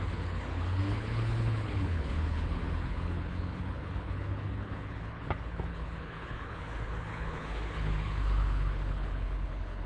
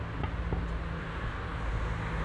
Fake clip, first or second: first